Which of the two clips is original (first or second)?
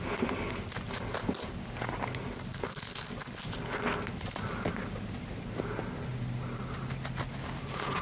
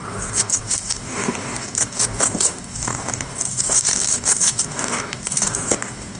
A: first